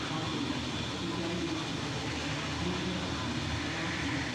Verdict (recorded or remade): recorded